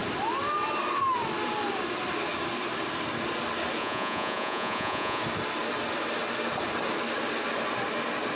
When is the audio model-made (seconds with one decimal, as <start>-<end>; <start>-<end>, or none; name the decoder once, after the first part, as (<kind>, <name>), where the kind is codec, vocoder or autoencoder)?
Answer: 3.8-5.2 (vocoder, Vocos)